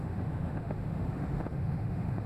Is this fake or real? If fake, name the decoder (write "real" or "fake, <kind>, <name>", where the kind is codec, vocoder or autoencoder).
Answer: fake, autoencoder, DAC-VAE